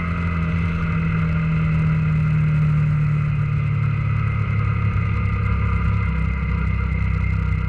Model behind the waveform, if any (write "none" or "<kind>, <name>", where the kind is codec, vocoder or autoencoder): none